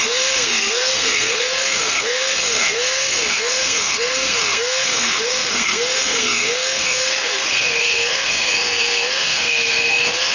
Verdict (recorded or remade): remade